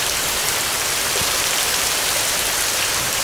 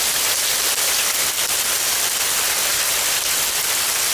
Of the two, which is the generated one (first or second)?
first